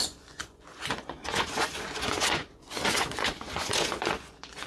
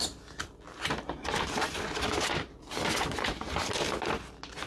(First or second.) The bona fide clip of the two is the second